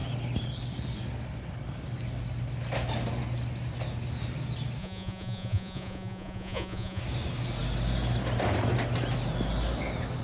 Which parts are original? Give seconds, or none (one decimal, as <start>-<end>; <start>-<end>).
0.0-4.8; 7.0-10.2

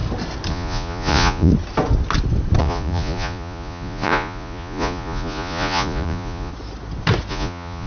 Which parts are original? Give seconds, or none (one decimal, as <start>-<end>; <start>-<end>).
0.0-0.5; 1.5-2.6; 6.5-7.3